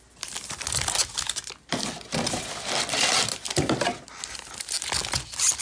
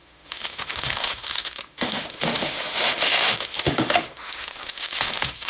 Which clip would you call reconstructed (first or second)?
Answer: second